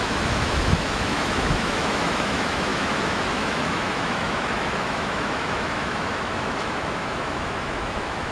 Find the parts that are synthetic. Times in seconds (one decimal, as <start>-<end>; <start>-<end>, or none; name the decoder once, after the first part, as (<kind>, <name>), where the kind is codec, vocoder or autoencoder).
0.0-8.3 (autoencoder, DAC-VAE)